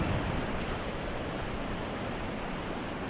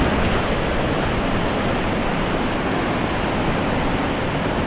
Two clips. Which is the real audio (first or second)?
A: second